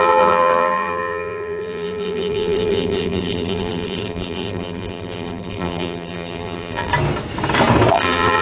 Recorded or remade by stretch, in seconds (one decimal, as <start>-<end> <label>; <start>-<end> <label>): 0.0-6.9 remade; 6.9-7.9 recorded; 7.9-8.4 remade